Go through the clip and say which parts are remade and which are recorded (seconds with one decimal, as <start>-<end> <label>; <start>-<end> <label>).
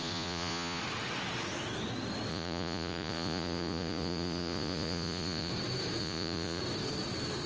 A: 0.0-0.8 remade; 0.8-2.3 recorded; 2.3-5.5 remade; 5.5-6.0 recorded; 6.0-6.6 remade; 6.6-7.5 recorded